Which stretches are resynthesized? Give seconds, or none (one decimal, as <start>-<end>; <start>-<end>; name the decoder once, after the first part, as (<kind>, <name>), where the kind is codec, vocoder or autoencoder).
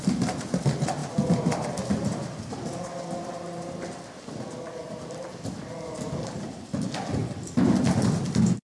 none